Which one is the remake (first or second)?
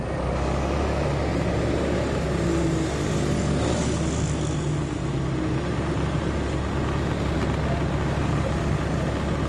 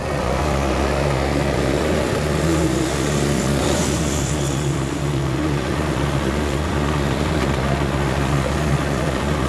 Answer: second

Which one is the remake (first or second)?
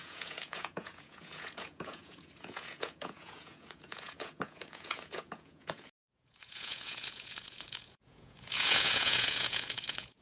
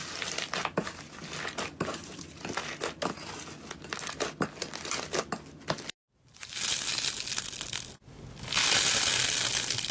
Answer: first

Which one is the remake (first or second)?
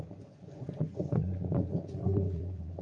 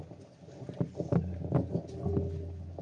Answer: first